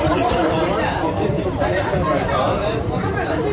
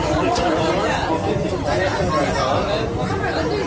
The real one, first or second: second